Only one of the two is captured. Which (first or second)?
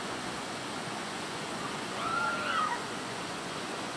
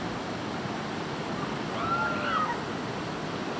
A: second